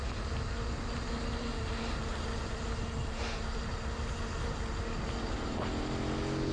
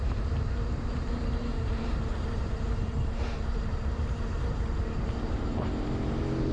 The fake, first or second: second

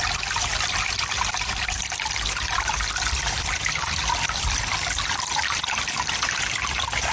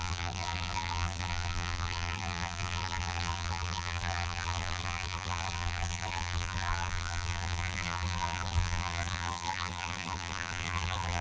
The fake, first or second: second